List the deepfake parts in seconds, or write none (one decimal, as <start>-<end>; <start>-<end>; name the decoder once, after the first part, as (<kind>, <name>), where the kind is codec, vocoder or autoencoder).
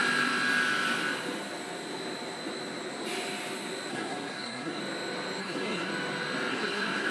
3.9-4.8 (codec, SNAC); 5.4-5.9; 6.5-7.1